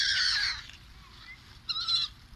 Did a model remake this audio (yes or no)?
no